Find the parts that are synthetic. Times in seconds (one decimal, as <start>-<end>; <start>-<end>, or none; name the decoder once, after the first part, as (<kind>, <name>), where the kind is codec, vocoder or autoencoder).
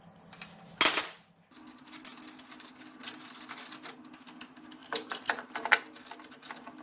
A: 4.8-5.5 (vocoder, BigVGAN v2)